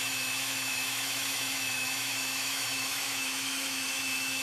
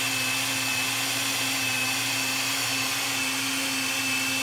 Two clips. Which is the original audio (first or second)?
second